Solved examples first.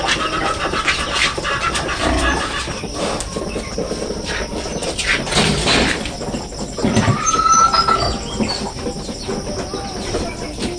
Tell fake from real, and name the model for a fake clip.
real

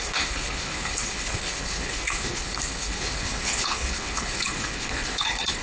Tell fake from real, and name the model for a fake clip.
fake, codec, HILCodec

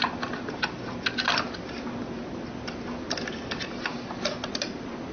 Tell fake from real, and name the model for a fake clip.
real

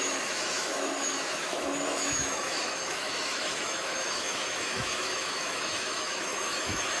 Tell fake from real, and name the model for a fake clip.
fake, autoencoder, DAC-VAE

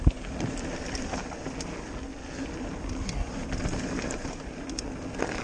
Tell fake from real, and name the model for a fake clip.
real